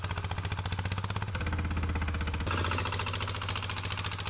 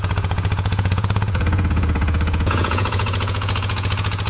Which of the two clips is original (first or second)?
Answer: first